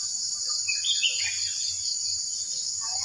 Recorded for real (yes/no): yes